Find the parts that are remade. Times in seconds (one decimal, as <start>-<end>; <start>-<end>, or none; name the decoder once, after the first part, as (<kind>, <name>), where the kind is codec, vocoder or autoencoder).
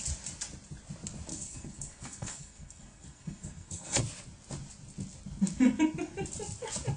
1.3-4.0 (codec, SNAC)